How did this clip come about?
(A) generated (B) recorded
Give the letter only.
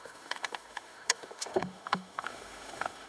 A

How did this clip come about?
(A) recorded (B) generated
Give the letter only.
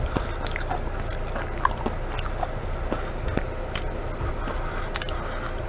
A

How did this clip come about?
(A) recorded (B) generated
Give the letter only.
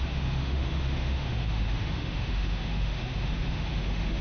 B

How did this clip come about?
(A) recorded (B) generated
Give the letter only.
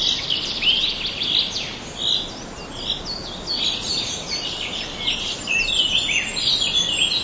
A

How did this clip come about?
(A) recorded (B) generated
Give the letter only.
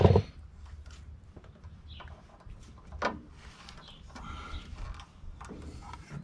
A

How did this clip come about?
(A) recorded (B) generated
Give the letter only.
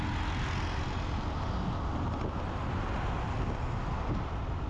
A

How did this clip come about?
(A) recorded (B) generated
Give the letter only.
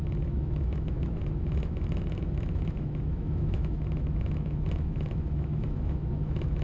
B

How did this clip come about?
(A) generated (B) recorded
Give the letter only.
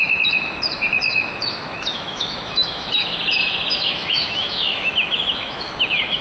A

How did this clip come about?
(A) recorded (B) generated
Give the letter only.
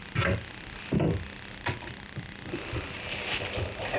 A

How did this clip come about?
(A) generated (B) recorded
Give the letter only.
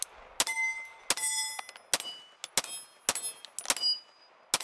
B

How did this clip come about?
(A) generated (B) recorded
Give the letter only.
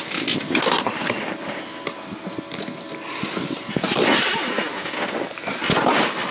B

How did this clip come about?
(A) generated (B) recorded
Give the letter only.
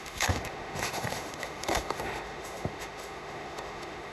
A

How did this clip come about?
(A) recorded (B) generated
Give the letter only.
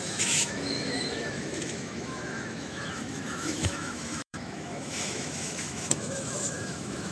B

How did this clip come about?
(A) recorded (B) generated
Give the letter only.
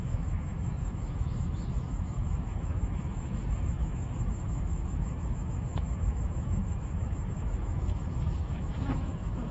B